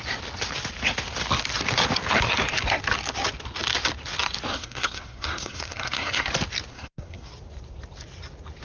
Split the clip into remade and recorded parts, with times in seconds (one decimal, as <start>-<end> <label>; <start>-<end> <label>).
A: 0.0-4.5 recorded; 4.5-6.3 remade; 6.3-6.7 recorded; 6.7-7.3 remade; 7.3-8.6 recorded

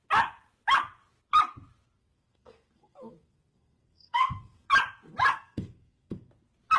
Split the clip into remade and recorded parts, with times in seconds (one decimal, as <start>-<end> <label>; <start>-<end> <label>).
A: 0.0-2.0 recorded; 2.0-4.7 remade; 4.7-5.3 recorded; 5.3-6.3 remade; 6.3-6.8 recorded

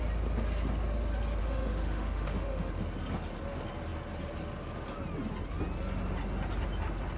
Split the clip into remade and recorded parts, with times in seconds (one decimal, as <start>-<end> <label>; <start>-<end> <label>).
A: 0.0-1.4 recorded; 1.4-2.7 remade; 2.7-7.2 recorded

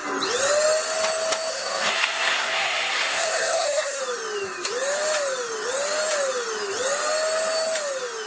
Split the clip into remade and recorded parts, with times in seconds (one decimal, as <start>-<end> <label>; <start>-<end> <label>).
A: 0.0-1.5 recorded; 1.5-4.0 remade; 4.0-8.3 recorded

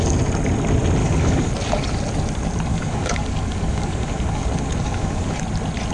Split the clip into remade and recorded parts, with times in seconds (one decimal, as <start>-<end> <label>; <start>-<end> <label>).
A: 0.0-1.0 recorded; 1.0-1.5 remade; 1.5-2.7 recorded; 2.7-5.4 remade; 5.4-5.9 recorded

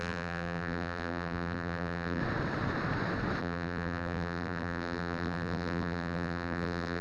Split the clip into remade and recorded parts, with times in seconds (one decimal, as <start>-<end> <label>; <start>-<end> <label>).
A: 0.0-2.2 remade; 2.2-3.4 recorded; 3.4-7.0 remade

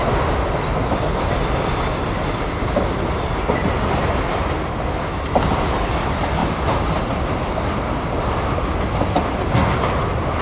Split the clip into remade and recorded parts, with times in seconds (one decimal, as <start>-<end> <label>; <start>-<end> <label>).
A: 0.0-10.4 recorded

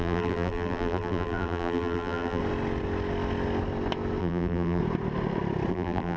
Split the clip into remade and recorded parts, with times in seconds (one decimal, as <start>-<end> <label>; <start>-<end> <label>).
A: 0.0-2.4 remade; 2.4-4.2 recorded; 4.2-4.8 remade; 4.8-5.7 recorded; 5.7-6.2 remade